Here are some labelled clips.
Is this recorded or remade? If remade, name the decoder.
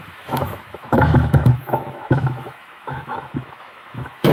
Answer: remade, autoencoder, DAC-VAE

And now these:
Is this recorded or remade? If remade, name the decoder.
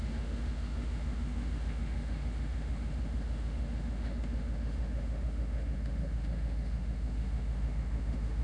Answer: remade, autoencoder, DAC-VAE